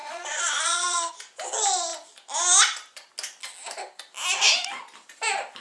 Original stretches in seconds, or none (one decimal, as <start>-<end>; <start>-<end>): 1.1-5.6